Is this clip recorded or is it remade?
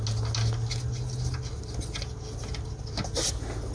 recorded